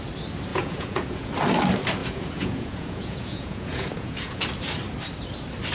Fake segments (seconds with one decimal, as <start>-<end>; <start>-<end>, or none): 0.5-1.3; 2.0-4.4